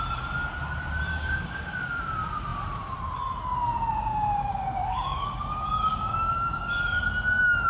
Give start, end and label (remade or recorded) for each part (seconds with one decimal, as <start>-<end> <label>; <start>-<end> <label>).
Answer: 0.0-1.1 recorded; 1.1-2.0 remade; 2.0-4.0 recorded; 4.0-7.0 remade; 7.0-7.7 recorded

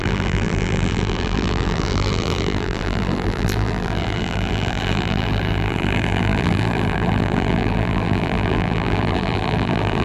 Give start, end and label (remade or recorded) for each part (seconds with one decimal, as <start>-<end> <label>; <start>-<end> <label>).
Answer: 0.0-10.0 remade